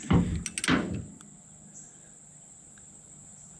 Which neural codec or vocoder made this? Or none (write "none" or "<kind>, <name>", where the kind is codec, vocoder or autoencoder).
none